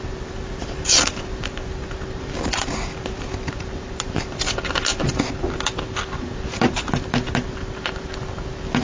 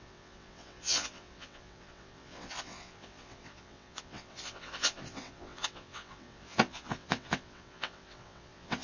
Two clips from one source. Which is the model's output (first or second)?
second